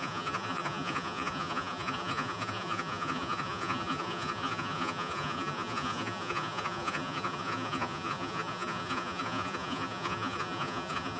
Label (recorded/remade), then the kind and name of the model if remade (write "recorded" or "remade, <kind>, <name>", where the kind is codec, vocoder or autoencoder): remade, vocoder, Vocos